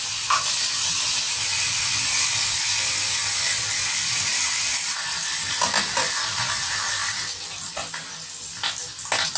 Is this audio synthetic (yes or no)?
no